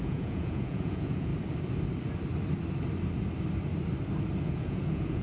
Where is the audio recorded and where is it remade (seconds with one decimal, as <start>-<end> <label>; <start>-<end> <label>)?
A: 0.0-1.3 remade; 1.3-4.4 recorded; 4.4-5.2 remade